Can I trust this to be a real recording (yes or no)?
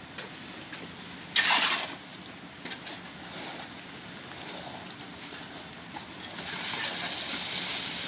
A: yes